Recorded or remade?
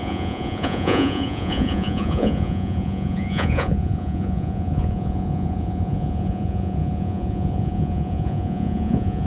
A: remade